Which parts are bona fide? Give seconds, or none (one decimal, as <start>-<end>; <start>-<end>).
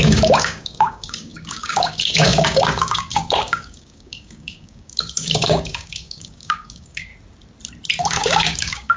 7.1-8.0